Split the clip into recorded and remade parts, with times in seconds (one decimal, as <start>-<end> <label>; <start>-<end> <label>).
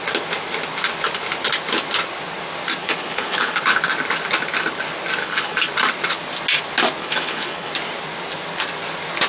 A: 0.0-2.8 recorded; 2.8-3.6 remade; 3.6-5.2 recorded; 5.2-5.7 remade; 5.7-7.0 recorded; 7.0-7.7 remade; 7.7-9.3 recorded